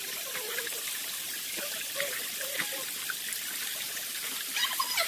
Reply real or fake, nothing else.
fake